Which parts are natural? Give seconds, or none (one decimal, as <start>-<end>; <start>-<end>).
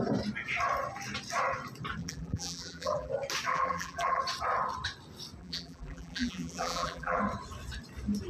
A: 0.0-2.0; 3.1-3.5; 4.2-5.4; 7.2-8.3